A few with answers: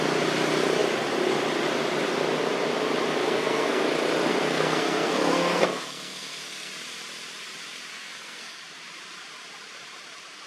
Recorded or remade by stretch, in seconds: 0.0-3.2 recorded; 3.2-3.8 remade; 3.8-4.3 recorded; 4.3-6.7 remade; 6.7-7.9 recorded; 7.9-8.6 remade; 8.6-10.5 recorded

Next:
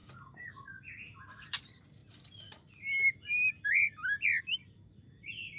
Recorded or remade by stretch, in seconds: 0.0-5.6 recorded

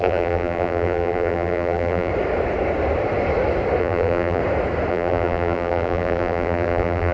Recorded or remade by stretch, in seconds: 0.0-2.1 remade; 2.1-3.8 recorded; 3.8-4.4 remade; 4.4-4.9 recorded; 4.9-7.1 remade

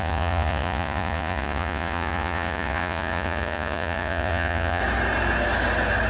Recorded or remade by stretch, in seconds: 0.0-4.8 remade; 4.8-6.1 recorded

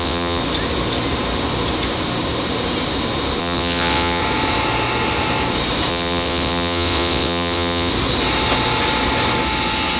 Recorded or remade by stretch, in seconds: 0.0-0.4 remade; 0.4-3.4 recorded; 3.4-4.2 remade; 4.2-5.9 recorded; 5.9-7.9 remade; 7.9-10.0 recorded

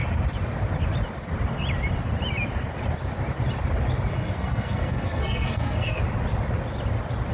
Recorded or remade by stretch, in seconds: 0.0-4.1 recorded; 4.1-6.0 remade; 6.0-7.3 recorded